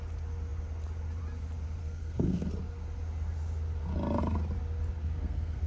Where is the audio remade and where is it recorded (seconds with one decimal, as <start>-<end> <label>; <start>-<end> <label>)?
0.0-1.8 recorded; 1.8-2.5 remade; 2.5-5.0 recorded; 5.0-5.7 remade